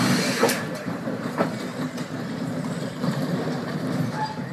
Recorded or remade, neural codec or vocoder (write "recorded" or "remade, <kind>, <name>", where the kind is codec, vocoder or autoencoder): remade, vocoder, BigVGAN v2